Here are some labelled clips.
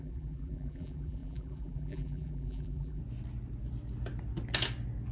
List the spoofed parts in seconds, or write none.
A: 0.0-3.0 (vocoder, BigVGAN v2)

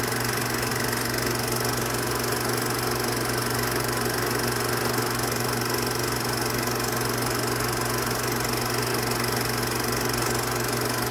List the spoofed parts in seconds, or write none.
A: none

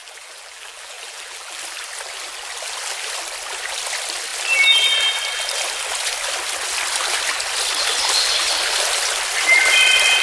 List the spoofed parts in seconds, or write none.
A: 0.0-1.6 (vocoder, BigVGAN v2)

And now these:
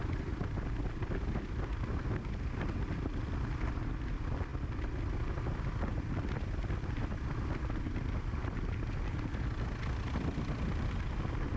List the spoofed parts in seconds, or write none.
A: none

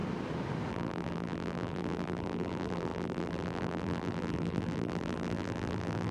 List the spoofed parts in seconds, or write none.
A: 0.7-6.1 (vocoder, BigVGAN v2)